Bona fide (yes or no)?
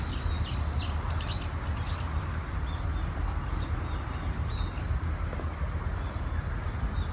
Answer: yes